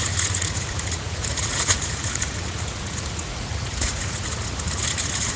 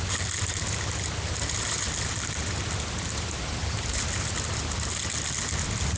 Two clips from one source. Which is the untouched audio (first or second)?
second